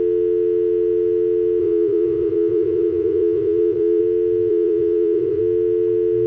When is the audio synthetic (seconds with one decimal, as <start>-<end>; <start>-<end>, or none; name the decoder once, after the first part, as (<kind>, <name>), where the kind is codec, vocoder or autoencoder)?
1.6-4.0 (vocoder, Vocos); 4.5-5.4